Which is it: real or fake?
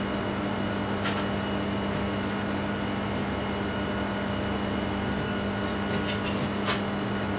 real